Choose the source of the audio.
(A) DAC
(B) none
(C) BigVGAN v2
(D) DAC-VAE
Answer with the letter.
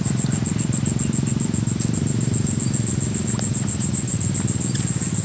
B